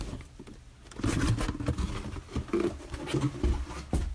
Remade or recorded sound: recorded